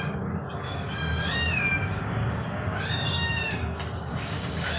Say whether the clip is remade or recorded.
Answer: remade